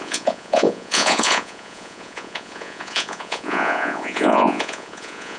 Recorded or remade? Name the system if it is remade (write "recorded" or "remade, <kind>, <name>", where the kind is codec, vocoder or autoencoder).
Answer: remade, vocoder, Vocos